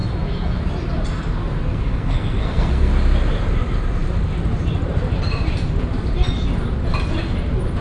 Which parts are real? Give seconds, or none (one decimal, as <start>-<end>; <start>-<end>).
0.0-1.7; 2.9-7.8